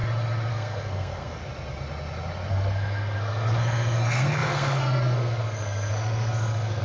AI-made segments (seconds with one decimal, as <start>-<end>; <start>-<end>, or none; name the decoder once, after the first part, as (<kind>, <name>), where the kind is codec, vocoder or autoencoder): 0.5-1.4 (codec, SNAC); 2.5-6.8